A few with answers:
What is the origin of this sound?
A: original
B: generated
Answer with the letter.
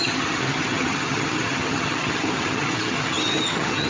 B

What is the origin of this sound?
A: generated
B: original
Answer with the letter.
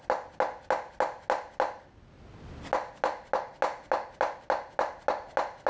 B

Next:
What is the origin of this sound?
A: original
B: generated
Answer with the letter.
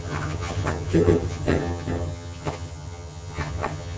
B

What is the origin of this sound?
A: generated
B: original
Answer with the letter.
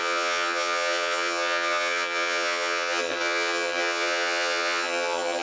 A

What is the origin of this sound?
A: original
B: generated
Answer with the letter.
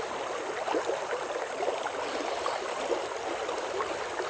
A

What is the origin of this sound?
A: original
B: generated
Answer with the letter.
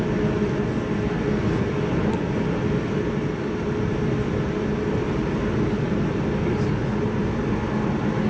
A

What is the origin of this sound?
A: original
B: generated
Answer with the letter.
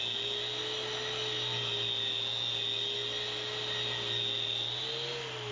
A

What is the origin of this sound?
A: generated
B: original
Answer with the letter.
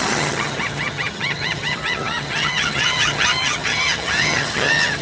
A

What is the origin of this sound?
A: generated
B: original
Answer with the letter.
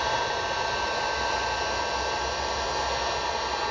B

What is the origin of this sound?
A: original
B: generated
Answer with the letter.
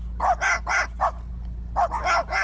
A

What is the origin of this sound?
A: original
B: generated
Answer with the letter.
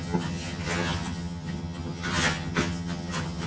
B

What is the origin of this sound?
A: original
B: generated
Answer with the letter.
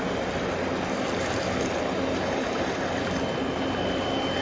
A